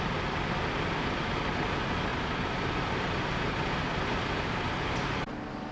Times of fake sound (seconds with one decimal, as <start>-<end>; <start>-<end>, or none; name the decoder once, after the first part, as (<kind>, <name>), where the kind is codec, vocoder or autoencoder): 2.1-5.7 (vocoder, BigVGAN v2)